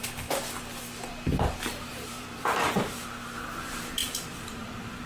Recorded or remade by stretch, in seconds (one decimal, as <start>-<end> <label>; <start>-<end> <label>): 0.0-1.7 recorded; 1.7-5.1 remade